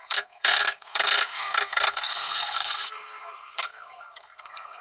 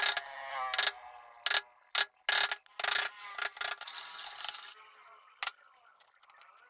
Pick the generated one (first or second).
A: first